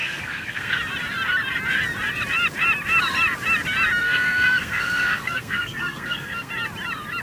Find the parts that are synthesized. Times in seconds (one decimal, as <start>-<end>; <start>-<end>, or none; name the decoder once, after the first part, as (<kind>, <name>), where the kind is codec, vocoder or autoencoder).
0.0-0.8 (codec, SNAC); 4.0-6.5